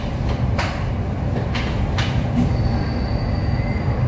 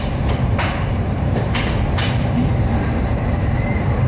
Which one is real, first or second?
first